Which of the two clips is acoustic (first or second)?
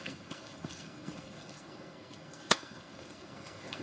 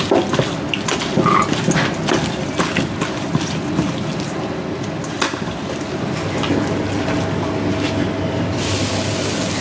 second